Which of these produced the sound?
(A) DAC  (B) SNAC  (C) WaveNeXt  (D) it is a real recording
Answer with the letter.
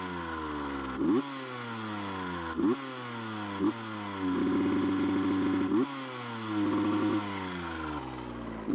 D